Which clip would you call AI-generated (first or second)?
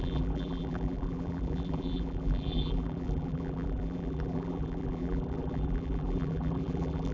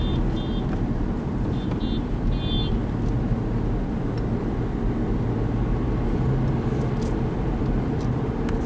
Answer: first